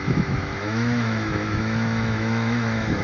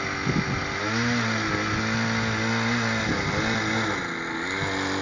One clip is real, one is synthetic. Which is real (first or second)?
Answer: second